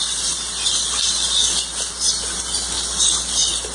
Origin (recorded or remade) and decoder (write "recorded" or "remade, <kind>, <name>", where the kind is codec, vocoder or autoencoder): recorded